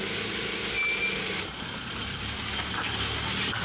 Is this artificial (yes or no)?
no